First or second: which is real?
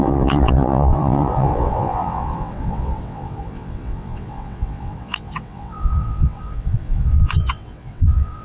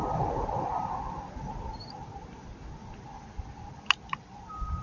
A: second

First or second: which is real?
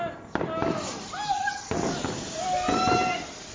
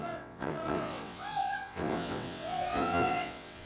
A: first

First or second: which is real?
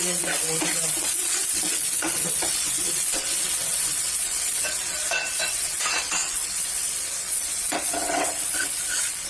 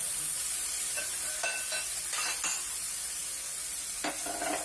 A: second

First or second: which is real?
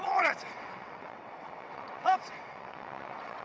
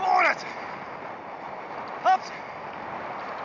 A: second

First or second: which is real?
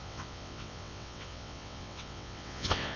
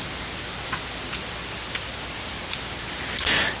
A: second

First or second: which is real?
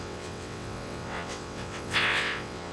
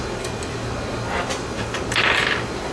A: second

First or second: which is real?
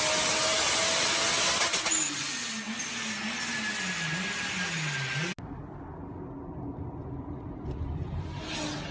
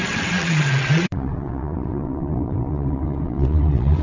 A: first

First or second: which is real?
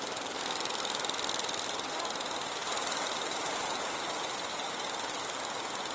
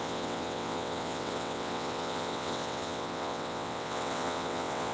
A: first